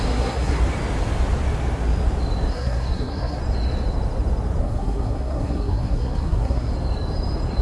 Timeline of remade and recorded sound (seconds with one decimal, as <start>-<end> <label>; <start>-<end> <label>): 0.0-0.6 remade; 0.6-2.5 recorded; 2.5-3.4 remade; 3.4-4.6 recorded; 4.6-6.7 remade; 6.7-7.6 recorded